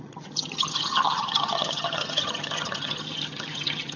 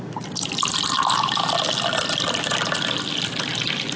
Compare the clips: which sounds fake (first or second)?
first